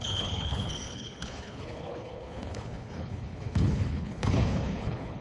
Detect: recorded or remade remade